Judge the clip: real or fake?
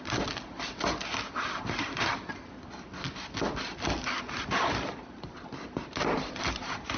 real